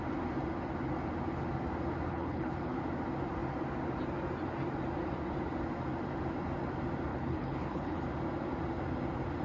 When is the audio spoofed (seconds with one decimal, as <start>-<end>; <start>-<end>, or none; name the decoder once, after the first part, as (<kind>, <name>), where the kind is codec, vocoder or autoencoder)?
2.1-2.8 (codec, HILCodec); 7.1-8.0